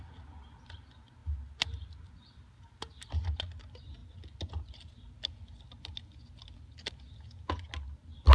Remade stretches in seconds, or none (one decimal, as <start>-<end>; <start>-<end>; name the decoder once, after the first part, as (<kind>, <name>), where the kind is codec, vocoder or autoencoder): none